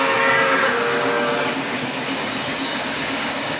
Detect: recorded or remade remade